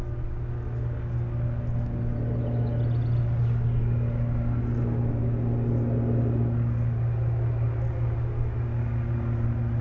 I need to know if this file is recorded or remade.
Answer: recorded